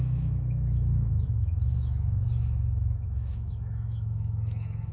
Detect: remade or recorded remade